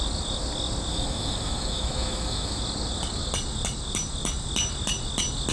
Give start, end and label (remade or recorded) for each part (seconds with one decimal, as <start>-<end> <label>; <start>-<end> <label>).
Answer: 0.0-0.9 recorded; 0.9-2.6 remade; 2.6-5.5 recorded